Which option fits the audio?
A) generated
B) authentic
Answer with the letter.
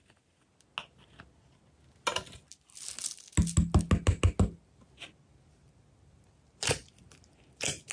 B